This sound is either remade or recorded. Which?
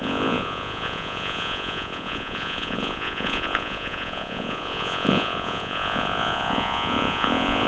remade